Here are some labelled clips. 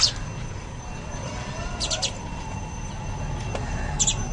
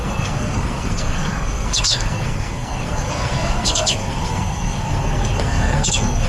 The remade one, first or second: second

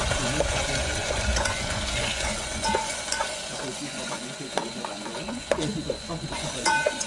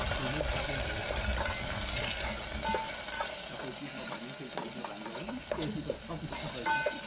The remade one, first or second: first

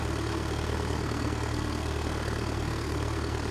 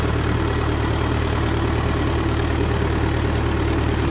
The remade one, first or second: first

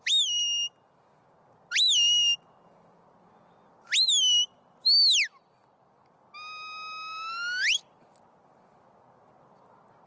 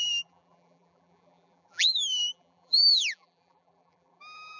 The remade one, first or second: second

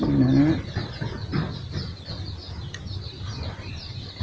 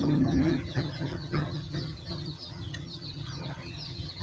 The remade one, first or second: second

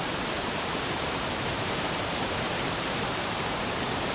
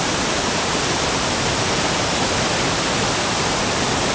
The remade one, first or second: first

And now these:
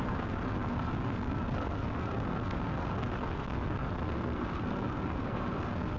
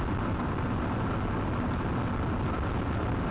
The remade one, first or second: first